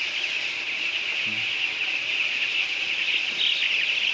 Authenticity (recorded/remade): recorded